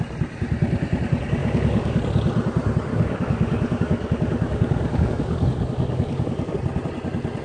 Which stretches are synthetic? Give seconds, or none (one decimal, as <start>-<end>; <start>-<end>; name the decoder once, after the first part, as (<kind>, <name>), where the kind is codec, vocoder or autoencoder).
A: 1.4-2.0 (codec, DAC); 2.9-6.5